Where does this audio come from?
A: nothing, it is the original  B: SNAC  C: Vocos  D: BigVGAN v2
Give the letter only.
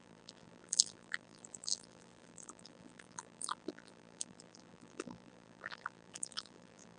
D